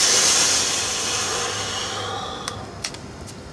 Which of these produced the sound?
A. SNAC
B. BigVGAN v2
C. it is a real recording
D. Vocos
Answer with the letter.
C